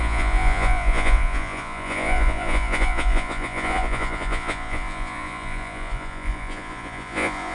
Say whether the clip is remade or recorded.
remade